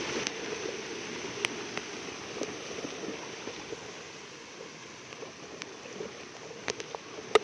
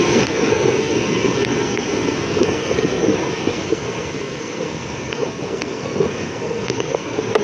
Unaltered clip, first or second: first